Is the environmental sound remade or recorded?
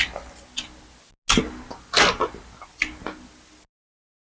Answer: recorded